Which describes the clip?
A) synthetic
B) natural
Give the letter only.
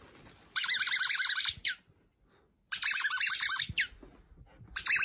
B